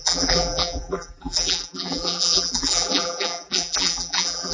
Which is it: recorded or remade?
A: remade